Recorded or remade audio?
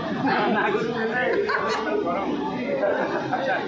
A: recorded